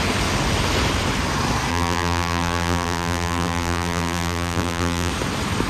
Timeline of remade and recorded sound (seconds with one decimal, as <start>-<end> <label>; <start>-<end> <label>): 0.0-1.7 recorded; 1.7-5.1 remade; 5.1-5.7 recorded